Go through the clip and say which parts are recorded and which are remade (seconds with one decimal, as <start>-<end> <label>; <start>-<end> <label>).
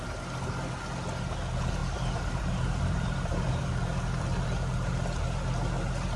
0.0-1.8 recorded; 1.8-4.9 remade; 4.9-6.2 recorded